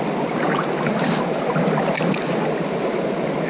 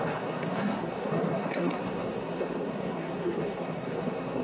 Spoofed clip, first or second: second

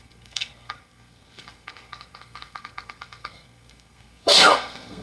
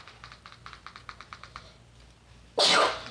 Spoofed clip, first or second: first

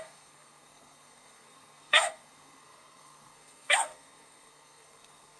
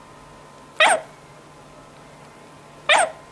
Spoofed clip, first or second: first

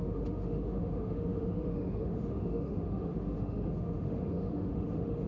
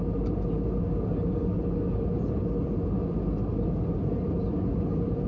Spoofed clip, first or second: first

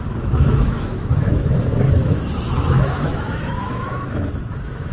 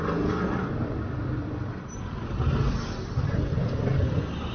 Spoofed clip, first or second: first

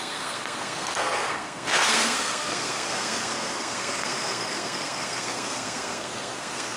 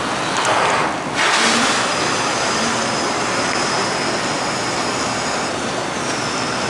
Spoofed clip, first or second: first